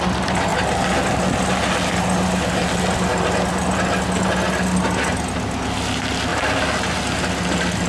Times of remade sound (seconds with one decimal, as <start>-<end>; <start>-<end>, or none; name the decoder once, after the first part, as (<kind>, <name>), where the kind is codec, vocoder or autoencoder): none